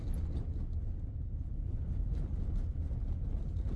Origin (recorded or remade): recorded